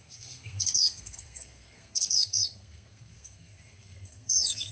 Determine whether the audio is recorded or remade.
remade